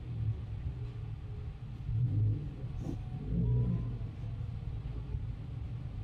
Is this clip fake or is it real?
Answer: real